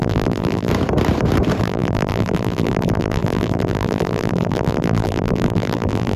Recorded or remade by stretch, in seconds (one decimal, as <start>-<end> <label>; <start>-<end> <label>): 0.0-0.7 remade; 0.7-1.6 recorded; 1.6-6.2 remade